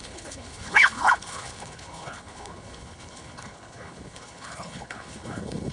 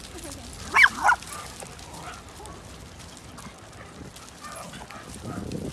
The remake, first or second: first